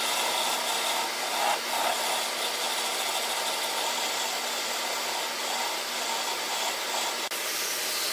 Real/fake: real